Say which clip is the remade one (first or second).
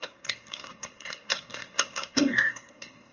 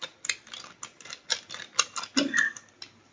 first